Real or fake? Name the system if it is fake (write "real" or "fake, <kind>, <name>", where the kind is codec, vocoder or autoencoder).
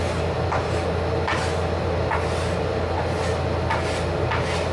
real